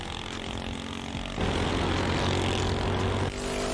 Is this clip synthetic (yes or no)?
no